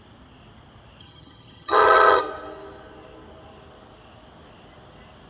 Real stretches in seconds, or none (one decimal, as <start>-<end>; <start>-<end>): 0.0-1.0; 2.2-5.3